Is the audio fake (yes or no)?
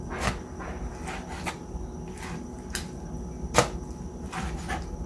no